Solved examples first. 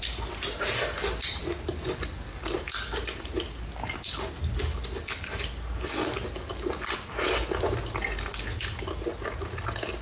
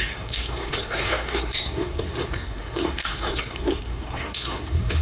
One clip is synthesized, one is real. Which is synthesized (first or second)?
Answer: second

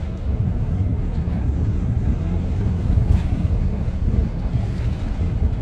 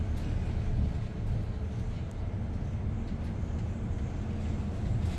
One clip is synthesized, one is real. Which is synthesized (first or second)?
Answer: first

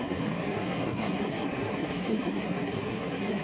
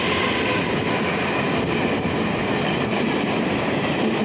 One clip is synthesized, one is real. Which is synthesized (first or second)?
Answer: first